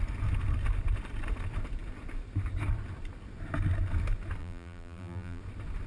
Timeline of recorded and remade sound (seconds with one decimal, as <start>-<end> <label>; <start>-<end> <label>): 0.0-4.4 recorded; 4.4-5.4 remade; 5.4-5.9 recorded